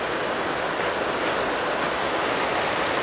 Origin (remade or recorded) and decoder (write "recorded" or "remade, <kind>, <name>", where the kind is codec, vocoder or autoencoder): recorded